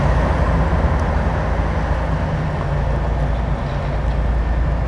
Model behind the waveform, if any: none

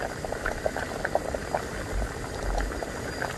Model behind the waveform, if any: none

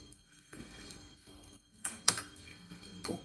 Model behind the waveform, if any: codec, SNAC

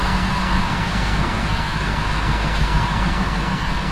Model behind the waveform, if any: codec, SNAC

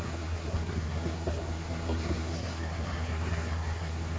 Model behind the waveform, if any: codec, SNAC